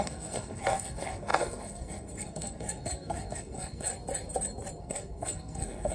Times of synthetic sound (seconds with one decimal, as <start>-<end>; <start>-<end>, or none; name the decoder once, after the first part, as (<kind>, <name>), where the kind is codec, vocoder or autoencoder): 0.0-3.9 (codec, SNAC); 4.8-5.9